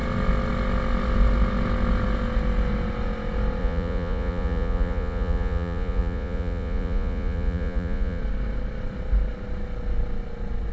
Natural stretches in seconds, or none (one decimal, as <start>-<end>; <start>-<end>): 0.0-3.6; 8.2-10.7